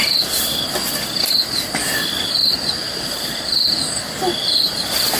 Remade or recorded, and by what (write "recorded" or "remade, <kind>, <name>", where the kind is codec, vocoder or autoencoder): remade, vocoder, BigVGAN v2